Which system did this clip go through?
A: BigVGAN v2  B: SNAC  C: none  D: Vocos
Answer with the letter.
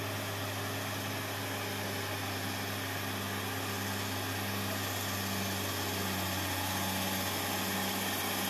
C